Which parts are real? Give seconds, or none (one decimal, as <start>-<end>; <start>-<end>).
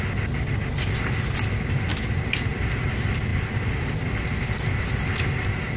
0.0-5.8